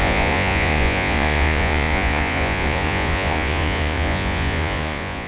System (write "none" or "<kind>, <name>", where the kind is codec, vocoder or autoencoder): vocoder, Vocos